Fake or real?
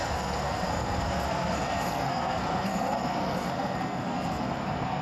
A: fake